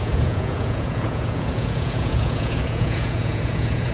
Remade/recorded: remade